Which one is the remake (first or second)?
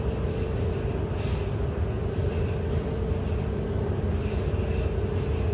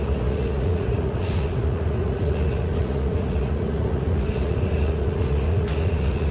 second